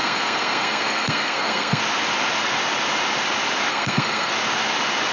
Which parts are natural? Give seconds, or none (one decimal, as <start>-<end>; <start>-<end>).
1.8-3.7; 4.3-5.1